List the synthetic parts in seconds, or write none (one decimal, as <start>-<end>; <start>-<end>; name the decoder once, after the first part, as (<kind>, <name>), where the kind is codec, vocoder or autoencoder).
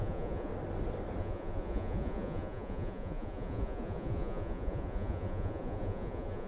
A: 0.0-0.5 (vocoder, Vocos); 1.2-6.5